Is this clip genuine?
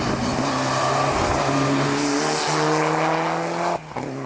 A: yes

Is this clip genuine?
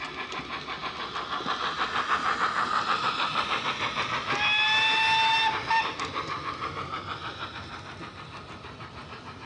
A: yes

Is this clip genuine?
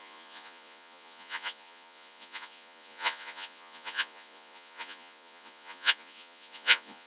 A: no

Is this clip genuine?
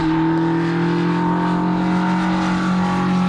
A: yes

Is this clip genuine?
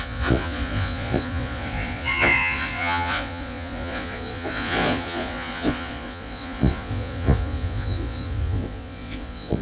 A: no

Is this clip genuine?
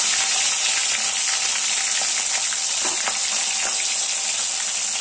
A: yes